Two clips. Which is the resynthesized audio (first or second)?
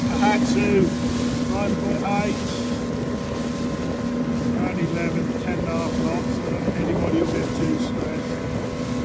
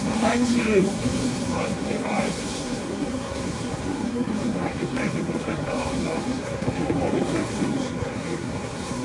second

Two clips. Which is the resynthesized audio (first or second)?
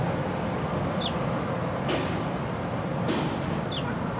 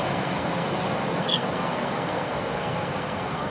second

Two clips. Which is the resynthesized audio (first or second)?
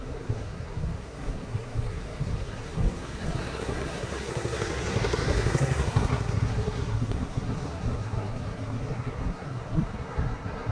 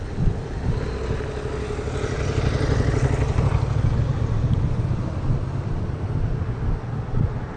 first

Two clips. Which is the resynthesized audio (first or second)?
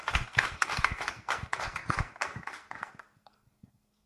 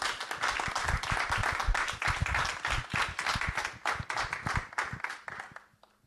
first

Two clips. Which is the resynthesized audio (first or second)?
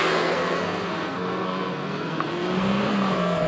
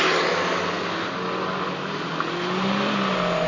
first